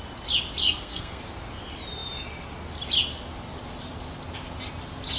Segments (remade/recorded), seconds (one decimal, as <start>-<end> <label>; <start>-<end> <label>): 0.0-0.6 recorded; 0.6-1.2 remade; 1.2-5.2 recorded